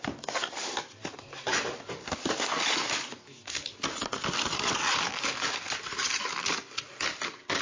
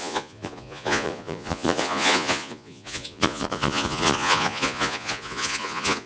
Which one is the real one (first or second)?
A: first